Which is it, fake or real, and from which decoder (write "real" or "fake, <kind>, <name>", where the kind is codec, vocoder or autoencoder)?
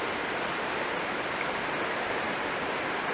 real